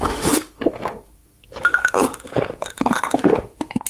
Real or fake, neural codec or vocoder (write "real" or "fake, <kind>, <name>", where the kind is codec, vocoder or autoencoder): fake, autoencoder, DAC-VAE